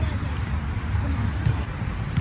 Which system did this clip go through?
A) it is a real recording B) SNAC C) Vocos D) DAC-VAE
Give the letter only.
A